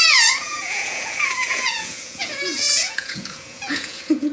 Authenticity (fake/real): fake